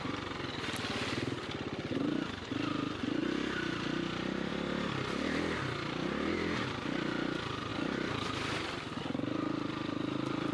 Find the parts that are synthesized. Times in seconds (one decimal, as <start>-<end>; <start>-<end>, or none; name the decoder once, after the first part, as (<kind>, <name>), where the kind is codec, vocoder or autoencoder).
none